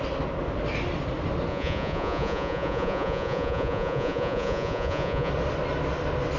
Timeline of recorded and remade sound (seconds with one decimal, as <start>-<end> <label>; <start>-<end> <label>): 0.0-1.5 recorded; 1.5-5.3 remade; 5.3-6.4 recorded